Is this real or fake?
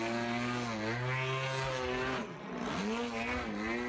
real